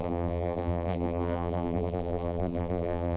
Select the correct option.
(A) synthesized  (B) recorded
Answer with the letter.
A